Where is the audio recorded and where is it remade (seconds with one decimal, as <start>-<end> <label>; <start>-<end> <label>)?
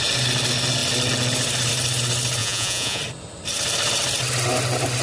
0.0-2.4 recorded; 2.4-3.0 remade; 3.0-5.0 recorded